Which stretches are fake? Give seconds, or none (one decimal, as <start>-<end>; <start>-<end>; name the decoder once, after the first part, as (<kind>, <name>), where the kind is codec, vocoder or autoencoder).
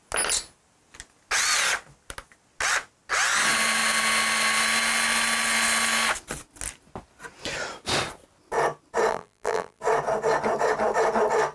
9.1-9.8 (vocoder, BigVGAN v2)